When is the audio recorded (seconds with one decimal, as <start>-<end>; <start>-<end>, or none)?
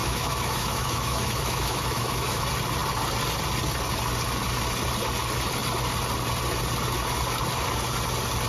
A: 2.4-8.5